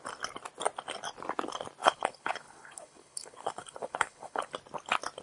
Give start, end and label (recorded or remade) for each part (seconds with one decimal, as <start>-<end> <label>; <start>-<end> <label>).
0.0-1.8 recorded; 1.8-4.5 remade; 4.5-5.2 recorded